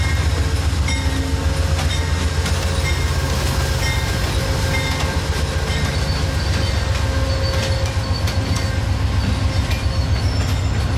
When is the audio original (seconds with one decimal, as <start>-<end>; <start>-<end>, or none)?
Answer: 0.0-11.0